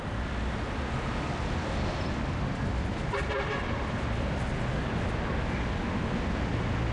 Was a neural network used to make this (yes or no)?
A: no